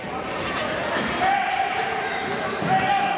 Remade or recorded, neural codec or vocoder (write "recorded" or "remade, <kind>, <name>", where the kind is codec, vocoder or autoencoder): recorded